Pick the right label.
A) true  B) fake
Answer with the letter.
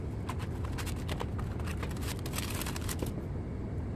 A